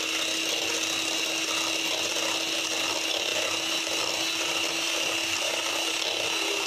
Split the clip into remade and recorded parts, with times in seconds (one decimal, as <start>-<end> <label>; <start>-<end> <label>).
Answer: 0.0-6.7 recorded